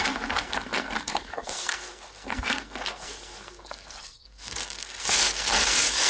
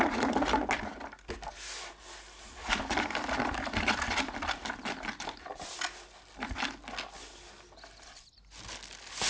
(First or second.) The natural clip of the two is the second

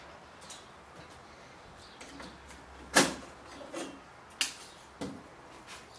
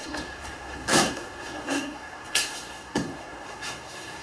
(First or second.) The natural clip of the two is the first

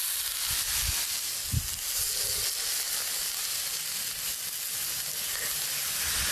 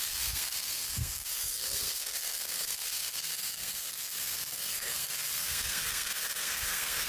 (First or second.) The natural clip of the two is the first